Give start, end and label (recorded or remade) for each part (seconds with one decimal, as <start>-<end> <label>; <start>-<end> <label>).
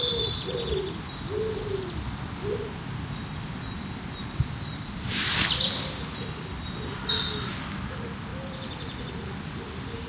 0.0-10.1 recorded